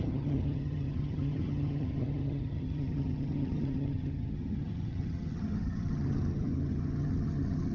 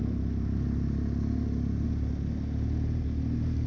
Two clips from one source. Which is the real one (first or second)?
second